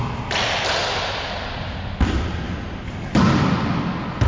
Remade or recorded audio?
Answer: recorded